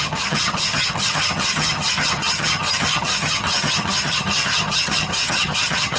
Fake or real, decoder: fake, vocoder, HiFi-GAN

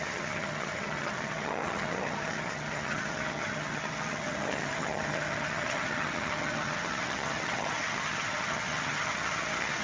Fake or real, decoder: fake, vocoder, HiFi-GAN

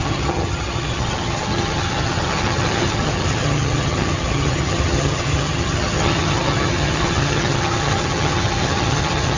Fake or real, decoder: fake, vocoder, HiFi-GAN